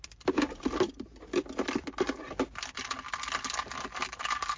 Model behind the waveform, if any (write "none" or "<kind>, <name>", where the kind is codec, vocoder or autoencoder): none